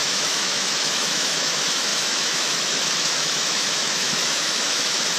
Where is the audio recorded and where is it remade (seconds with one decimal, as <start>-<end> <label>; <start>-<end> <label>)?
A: 0.0-5.2 remade